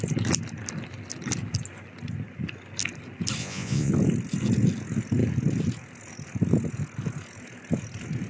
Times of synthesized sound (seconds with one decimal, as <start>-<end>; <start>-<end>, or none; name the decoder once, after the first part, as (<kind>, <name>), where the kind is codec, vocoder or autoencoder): 3.4-3.9 (vocoder, Vocos)